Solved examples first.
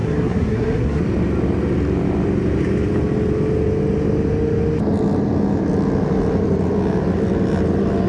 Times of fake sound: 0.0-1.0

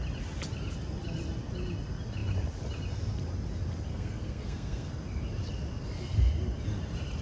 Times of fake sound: 3.9-4.9

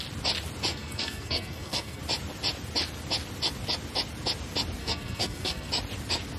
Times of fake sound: 0.7-2.0; 4.8-5.7